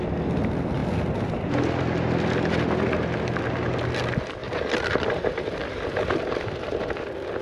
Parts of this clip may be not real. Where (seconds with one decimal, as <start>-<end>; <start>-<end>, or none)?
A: 4.4-6.8